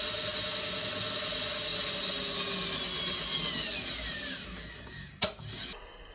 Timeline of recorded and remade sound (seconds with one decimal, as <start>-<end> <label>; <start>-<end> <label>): 0.0-6.1 recorded